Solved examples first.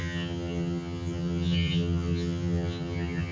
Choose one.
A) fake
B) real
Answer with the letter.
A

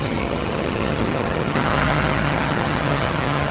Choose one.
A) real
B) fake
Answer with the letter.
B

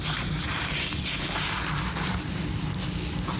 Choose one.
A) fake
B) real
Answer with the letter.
B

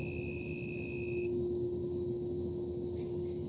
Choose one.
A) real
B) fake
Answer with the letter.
A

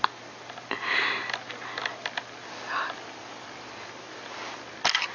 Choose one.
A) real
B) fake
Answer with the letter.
A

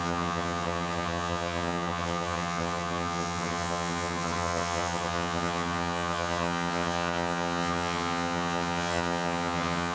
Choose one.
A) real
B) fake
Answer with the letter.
B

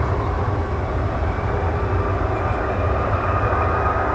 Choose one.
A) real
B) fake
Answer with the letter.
A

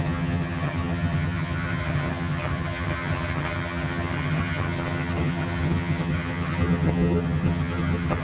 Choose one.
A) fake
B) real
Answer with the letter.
A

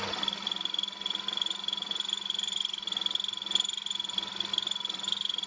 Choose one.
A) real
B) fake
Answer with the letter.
A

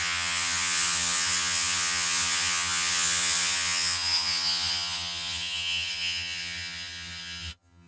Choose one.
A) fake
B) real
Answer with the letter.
A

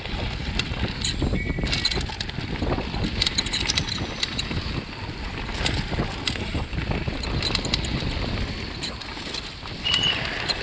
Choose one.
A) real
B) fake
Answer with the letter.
A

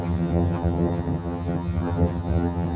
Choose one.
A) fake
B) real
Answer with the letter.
A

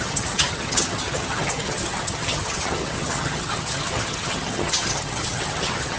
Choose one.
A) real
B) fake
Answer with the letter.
B